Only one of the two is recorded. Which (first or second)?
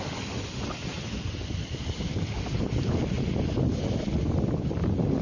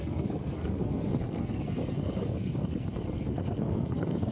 first